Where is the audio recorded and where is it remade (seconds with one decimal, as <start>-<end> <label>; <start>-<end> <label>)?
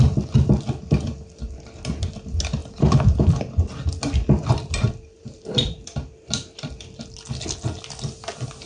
0.0-2.6 recorded; 2.6-7.1 remade; 7.1-8.7 recorded